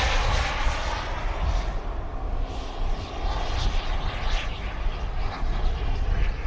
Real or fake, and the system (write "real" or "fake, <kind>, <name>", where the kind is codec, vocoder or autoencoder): real